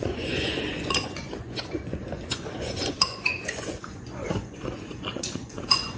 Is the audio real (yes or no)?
no